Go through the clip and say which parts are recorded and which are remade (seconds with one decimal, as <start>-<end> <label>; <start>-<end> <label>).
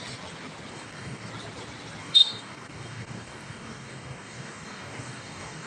0.0-0.7 recorded; 0.7-1.3 remade; 1.3-2.0 recorded; 2.0-5.7 remade